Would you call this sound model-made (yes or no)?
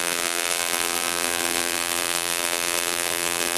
yes